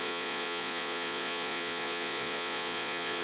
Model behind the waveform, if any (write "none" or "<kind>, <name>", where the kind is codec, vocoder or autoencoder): vocoder, Vocos